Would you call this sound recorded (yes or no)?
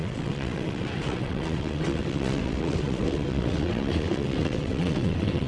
no